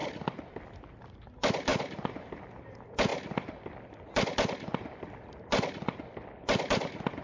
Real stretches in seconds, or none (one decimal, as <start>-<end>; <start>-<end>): 0.0-7.2